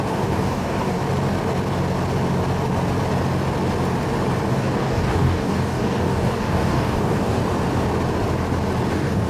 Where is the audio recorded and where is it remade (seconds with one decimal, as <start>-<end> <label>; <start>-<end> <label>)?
0.0-1.0 remade; 1.0-4.5 recorded; 4.5-7.4 remade; 7.4-8.9 recorded; 8.9-9.3 remade